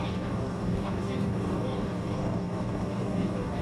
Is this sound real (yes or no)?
no